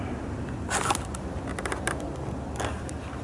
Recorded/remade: recorded